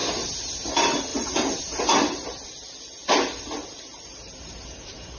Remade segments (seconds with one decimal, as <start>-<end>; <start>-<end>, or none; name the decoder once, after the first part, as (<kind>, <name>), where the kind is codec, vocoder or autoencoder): 1.1-1.6 (vocoder, BigVGAN v2); 3.9-5.2